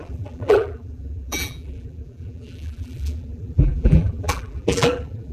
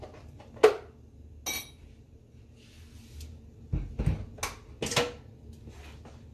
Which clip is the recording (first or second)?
second